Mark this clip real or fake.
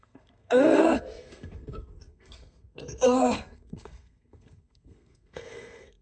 fake